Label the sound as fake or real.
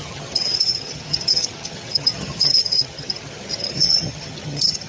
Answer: fake